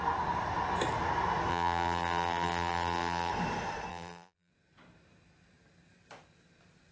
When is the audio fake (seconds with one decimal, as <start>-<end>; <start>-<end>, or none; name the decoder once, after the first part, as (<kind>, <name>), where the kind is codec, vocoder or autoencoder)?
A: 1.5-3.3 (vocoder, BigVGAN v2); 3.9-4.5